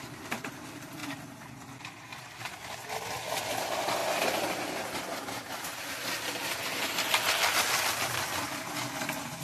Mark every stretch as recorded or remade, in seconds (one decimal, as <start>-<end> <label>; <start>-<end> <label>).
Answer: 0.0-1.0 remade; 1.0-3.4 recorded; 3.4-4.0 remade; 4.0-9.4 recorded